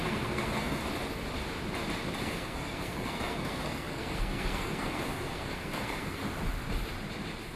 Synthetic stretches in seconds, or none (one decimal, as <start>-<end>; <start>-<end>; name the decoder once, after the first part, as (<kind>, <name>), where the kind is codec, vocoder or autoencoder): 0.0-0.8 (codec, SNAC); 2.2-6.2